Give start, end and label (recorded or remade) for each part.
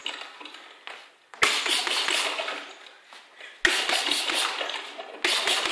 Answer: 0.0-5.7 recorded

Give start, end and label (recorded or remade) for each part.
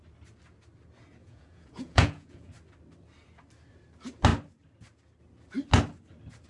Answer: 0.0-1.2 recorded; 1.2-2.5 remade; 2.5-6.5 recorded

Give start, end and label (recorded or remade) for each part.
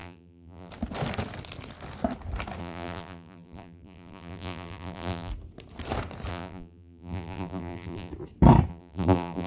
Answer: 0.0-0.7 remade; 0.7-2.6 recorded; 2.6-5.3 remade; 5.3-6.3 recorded; 6.3-8.1 remade; 8.1-8.7 recorded; 8.7-9.5 remade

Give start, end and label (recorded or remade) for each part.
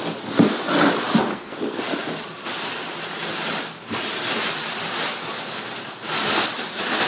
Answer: 0.0-1.3 recorded; 1.3-1.8 remade; 1.8-7.1 recorded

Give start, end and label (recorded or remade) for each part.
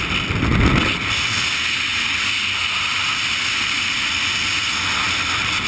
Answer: 0.0-5.7 recorded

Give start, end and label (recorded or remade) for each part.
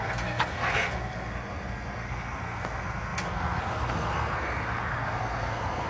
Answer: 0.0-5.9 remade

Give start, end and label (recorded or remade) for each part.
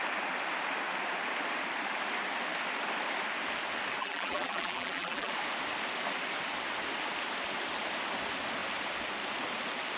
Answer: 0.0-4.0 recorded; 4.0-5.3 remade; 5.3-10.0 recorded